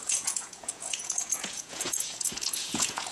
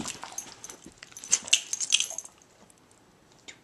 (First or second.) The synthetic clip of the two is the first